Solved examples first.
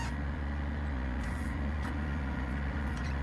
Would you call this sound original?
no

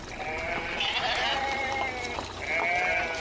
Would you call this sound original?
yes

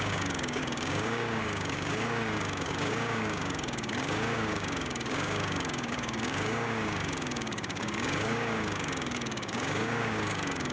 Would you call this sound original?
no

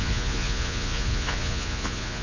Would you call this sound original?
no